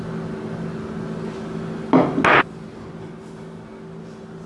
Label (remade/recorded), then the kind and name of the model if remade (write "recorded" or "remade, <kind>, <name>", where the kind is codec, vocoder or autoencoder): recorded